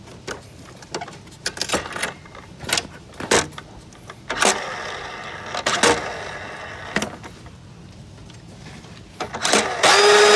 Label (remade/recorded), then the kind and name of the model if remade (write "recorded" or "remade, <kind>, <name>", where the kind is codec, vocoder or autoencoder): recorded